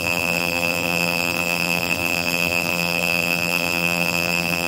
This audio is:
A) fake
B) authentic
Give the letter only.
A